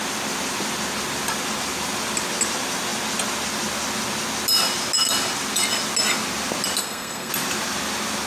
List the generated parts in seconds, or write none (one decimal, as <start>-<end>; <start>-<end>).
6.8-7.3

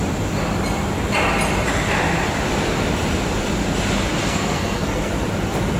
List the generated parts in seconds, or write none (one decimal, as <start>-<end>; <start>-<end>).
4.2-5.1

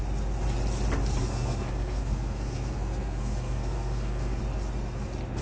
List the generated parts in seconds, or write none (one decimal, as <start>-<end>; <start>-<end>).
1.2-4.4